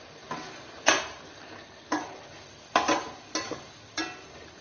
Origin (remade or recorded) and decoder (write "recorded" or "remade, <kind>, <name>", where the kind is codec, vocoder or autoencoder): recorded